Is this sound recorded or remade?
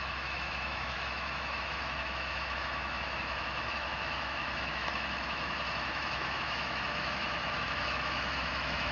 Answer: remade